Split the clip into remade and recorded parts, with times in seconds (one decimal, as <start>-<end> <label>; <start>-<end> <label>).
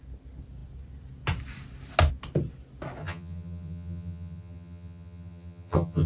0.0-3.0 recorded; 3.0-6.1 remade